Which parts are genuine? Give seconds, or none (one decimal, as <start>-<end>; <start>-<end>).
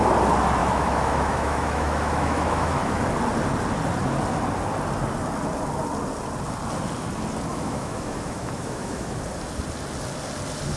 0.0-0.6; 3.0-7.5; 9.2-10.8